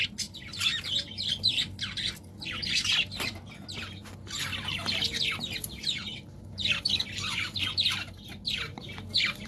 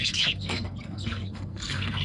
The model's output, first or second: second